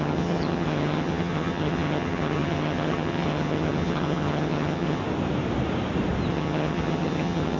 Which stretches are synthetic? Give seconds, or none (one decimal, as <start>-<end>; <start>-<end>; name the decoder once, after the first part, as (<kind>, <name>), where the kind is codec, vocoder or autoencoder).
0.0-5.0 (vocoder, HiFi-GAN); 6.3-7.6

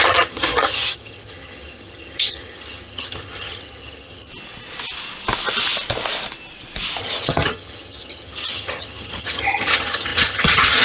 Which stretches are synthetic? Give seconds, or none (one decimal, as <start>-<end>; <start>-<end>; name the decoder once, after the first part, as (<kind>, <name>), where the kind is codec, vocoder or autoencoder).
0.0-4.3 (vocoder, HiFi-GAN); 7.0-10.8

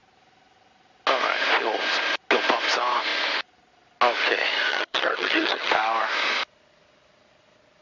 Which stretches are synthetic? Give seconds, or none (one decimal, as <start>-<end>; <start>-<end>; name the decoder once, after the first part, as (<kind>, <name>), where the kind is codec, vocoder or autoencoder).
4.7-5.7 (vocoder, HiFi-GAN)

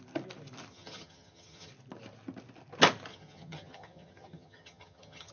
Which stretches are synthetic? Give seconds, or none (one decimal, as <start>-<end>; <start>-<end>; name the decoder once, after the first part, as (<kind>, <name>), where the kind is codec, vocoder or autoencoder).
0.7-1.7 (vocoder, HiFi-GAN); 3.1-5.3